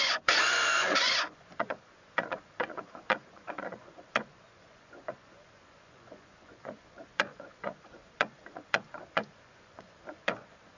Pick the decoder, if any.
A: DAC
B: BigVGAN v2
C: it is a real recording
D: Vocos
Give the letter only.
D